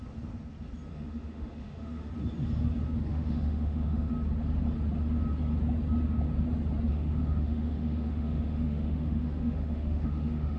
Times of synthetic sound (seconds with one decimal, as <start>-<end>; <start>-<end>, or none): 0.9-2.1; 3.1-4.1; 6.9-10.6